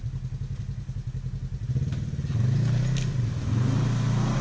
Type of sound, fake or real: real